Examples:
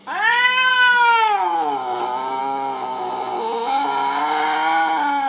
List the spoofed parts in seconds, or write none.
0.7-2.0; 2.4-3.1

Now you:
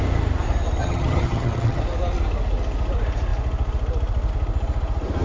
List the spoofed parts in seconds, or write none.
0.8-1.8

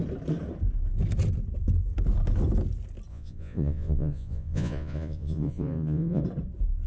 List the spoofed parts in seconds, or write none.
3.1-6.2

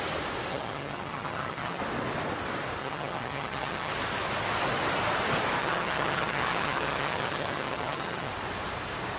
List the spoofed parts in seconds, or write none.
0.5-1.8; 2.8-3.9; 5.6-8.3

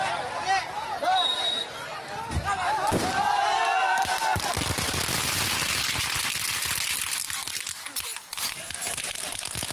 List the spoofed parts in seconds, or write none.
none

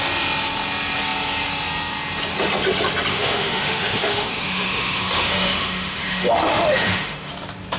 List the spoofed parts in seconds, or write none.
3.1-7.3

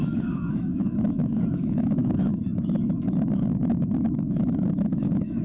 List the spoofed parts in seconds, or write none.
0.0-5.4

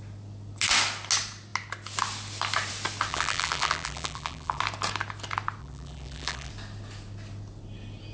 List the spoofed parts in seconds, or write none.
3.1-4.6; 5.6-6.5